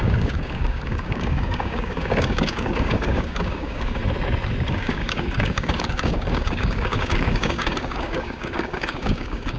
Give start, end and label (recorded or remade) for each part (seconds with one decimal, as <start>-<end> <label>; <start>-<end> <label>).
0.0-4.0 remade; 4.0-4.7 recorded; 4.7-9.6 remade